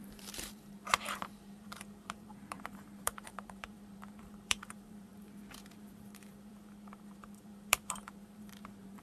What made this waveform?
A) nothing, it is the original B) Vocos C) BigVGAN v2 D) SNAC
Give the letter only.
C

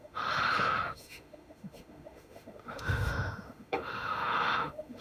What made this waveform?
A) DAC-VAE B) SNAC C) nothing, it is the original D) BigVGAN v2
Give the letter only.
A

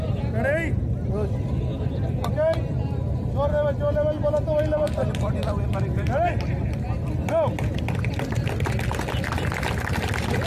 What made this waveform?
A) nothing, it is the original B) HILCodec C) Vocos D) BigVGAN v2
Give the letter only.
A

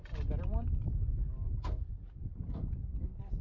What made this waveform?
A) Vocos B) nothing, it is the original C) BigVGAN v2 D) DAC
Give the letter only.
B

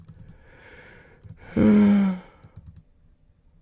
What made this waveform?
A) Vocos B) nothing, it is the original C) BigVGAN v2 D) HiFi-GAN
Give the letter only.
B